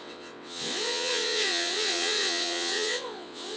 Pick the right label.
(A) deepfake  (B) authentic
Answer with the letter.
A